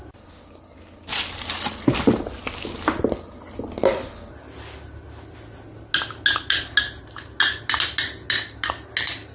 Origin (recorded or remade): recorded